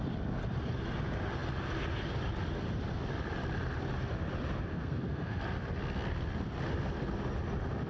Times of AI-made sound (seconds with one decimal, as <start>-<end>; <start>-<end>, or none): 4.7-5.4